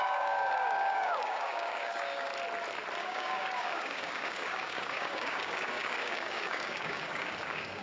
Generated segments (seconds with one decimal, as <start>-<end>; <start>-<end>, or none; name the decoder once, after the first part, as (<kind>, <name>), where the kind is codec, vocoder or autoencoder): 0.0-2.3 (codec, DAC); 3.0-7.8